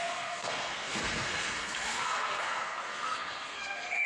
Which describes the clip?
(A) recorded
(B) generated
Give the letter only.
B